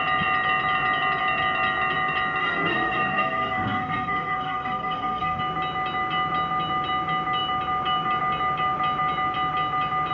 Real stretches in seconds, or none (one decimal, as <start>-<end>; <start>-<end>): 0.0-2.4; 5.4-10.1

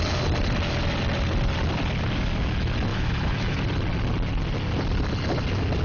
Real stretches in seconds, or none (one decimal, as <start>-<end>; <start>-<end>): 0.0-2.9; 3.6-5.8

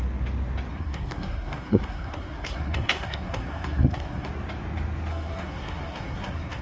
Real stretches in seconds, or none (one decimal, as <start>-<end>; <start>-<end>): 0.0-0.7; 4.3-5.1

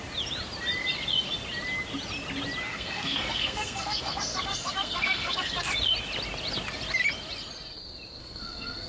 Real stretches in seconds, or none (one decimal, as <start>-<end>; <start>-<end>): 0.0-2.7; 5.7-8.2

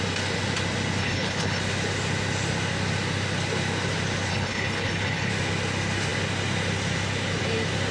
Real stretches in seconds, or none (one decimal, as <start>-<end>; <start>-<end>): 0.0-1.0; 1.6-4.3; 5.3-7.9

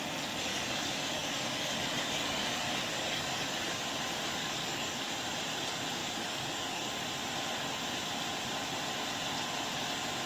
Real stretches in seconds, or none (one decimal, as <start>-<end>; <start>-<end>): 0.0-0.5; 3.8-4.4; 5.1-6.0; 6.9-10.3

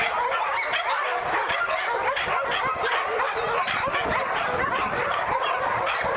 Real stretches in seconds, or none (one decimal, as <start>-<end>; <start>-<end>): 0.0-6.2